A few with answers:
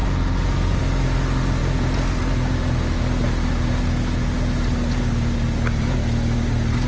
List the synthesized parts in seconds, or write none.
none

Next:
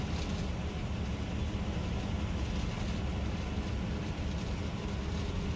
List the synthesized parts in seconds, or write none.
none

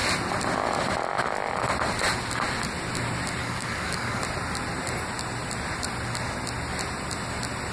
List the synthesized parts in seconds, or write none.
3.4-4.2 (codec, DAC)

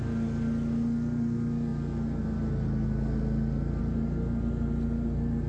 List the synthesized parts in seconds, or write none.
none

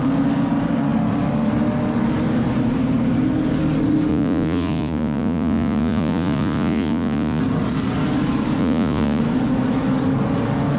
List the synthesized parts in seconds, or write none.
4.1-7.4 (vocoder, Vocos); 8.6-9.2